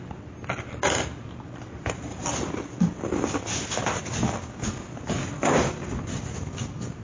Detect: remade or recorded recorded